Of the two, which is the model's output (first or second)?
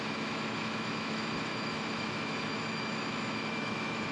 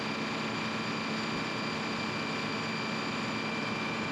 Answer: first